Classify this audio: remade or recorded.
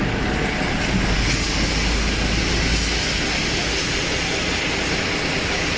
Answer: recorded